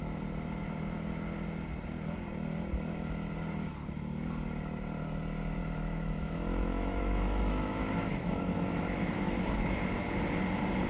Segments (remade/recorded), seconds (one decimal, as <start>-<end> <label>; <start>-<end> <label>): 0.0-5.6 recorded; 5.6-9.8 remade; 9.8-10.9 recorded